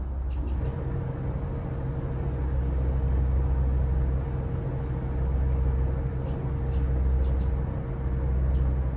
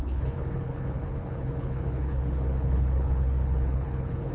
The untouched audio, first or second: first